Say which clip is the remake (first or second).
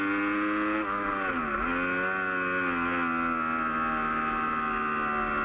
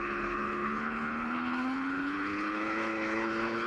second